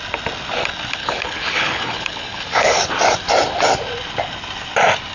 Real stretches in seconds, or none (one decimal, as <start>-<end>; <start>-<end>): 0.0-1.0; 2.8-5.1